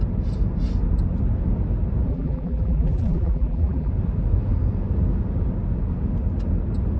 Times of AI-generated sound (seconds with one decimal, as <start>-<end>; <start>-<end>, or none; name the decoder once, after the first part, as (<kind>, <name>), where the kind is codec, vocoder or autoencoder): 2.1-3.9 (vocoder, BigVGAN v2)